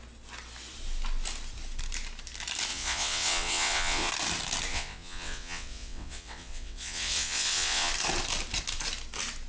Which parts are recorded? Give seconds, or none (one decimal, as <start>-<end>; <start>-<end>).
0.0-2.7; 4.1-4.7; 7.9-9.5